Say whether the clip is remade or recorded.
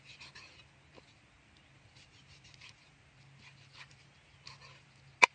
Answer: recorded